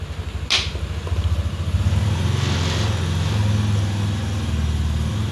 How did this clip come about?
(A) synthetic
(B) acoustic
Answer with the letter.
B